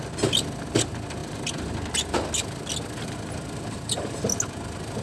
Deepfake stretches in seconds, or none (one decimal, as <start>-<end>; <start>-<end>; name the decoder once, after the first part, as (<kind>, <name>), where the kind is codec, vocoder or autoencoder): none

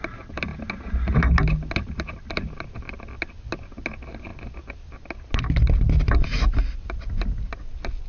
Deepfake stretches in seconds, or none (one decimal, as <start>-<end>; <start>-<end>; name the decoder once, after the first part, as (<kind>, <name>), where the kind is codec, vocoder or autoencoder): none

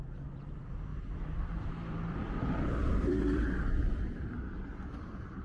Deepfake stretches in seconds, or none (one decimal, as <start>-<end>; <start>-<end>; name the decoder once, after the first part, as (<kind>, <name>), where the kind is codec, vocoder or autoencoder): 0.0-0.9 (vocoder, BigVGAN v2); 1.7-5.4

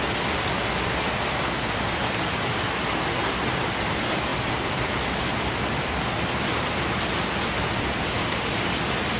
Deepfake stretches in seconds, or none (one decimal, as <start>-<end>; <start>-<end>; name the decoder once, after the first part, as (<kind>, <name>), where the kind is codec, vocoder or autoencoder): none

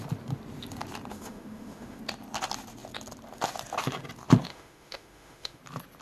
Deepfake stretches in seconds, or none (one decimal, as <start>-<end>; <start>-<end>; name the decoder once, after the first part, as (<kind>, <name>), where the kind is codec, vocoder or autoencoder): 1.1-2.0 (autoencoder, DAC-VAE); 4.5-5.6

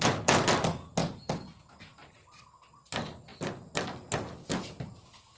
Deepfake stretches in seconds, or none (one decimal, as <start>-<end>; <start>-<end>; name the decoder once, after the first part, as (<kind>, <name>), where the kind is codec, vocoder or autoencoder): 1.0-2.9 (vocoder, BigVGAN v2)

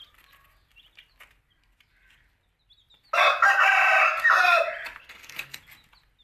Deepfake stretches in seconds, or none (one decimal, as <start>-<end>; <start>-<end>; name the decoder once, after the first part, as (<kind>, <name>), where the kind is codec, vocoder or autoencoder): 5.0-5.6 (codec, SNAC)